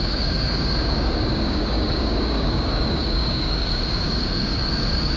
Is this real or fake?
fake